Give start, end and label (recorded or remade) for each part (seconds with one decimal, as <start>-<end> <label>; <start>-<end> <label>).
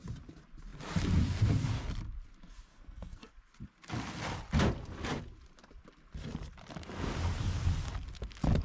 0.0-2.7 recorded; 2.7-3.3 remade; 3.3-8.6 recorded